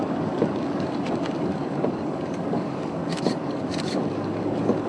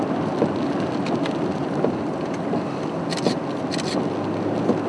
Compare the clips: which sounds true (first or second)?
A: second